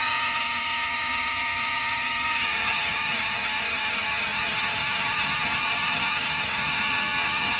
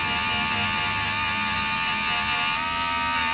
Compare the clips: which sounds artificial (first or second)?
first